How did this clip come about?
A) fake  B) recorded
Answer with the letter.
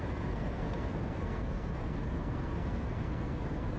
A